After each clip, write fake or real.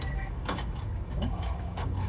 fake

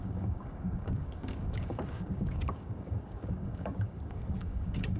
fake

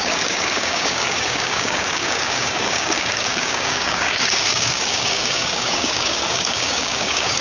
fake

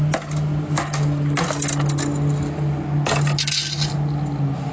real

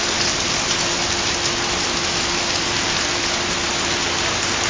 real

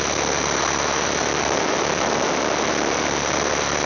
real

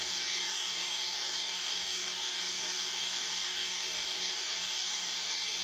fake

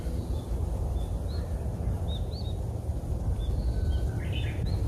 real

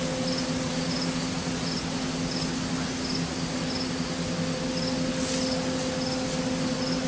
real